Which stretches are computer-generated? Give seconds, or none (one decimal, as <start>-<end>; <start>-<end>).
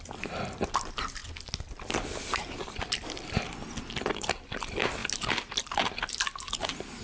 none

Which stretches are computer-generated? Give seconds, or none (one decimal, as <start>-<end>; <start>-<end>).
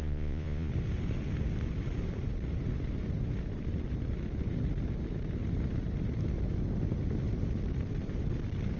0.0-0.7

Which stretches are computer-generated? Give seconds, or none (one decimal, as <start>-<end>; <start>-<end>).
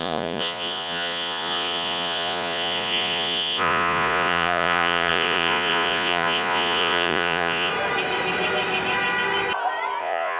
0.0-7.7; 10.0-10.4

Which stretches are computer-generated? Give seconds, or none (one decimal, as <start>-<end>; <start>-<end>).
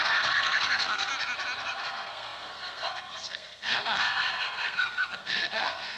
0.0-1.1; 1.8-6.0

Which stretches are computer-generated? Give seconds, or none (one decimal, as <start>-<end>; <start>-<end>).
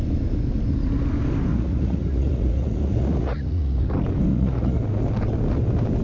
1.5-3.9; 4.3-4.8